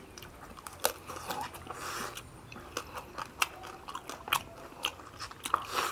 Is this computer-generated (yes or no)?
no